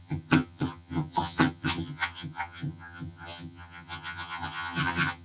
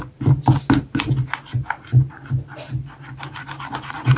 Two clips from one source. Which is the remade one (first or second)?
first